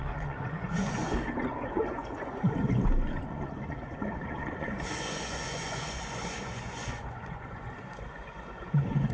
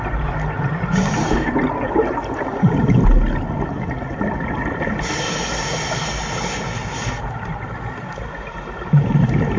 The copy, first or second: first